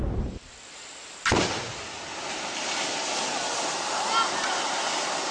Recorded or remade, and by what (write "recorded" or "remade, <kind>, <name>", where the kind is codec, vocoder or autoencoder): recorded